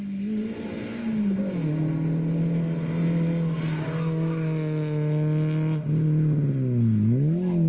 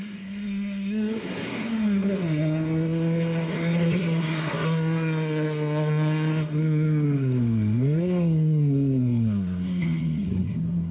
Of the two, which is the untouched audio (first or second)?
first